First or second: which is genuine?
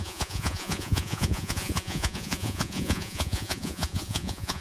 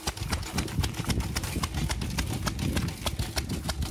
second